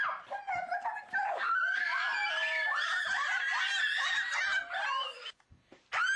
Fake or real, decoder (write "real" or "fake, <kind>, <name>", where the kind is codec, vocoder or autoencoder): real